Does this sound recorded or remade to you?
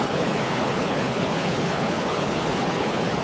remade